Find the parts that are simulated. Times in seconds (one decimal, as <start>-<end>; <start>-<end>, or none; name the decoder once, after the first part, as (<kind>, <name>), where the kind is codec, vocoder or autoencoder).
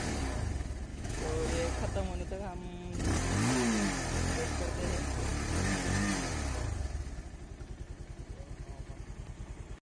0.9-1.6 (autoencoder, DAC-VAE)